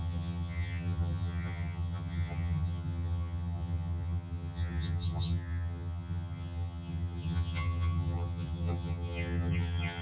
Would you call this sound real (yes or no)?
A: no